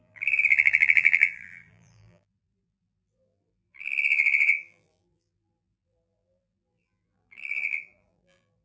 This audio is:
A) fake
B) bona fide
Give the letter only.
A